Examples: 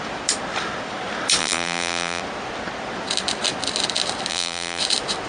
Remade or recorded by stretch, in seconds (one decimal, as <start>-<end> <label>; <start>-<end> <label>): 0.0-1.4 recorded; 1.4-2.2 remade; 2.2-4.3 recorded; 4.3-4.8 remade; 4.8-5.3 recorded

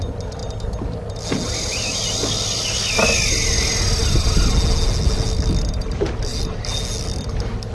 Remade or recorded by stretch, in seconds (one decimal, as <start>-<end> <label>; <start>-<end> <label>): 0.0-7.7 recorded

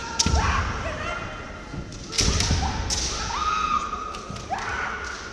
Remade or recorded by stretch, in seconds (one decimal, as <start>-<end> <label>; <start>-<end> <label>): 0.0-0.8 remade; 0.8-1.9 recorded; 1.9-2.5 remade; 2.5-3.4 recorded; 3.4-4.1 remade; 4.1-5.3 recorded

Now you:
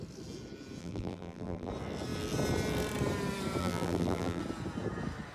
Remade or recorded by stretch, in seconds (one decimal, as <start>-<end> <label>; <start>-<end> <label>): 0.0-0.8 recorded; 0.8-1.7 remade; 1.7-3.6 recorded; 3.6-4.4 remade; 4.4-5.3 recorded

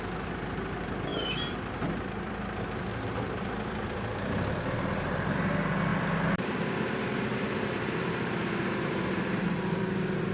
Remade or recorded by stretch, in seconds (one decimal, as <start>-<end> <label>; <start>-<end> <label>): 0.0-1.1 recorded; 1.1-5.4 remade; 5.4-5.9 recorded; 5.9-9.8 remade; 9.8-10.3 recorded

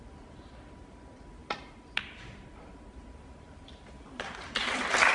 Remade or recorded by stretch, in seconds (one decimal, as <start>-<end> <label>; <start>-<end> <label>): 0.0-1.4 recorded; 1.4-4.5 remade; 4.5-5.1 recorded

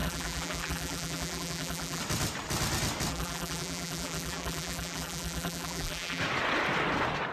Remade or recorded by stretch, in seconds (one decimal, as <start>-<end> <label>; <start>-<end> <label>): 0.0-2.0 remade; 2.0-3.1 recorded; 3.1-6.2 remade; 6.2-7.3 recorded